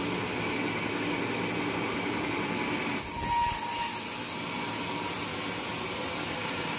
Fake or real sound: real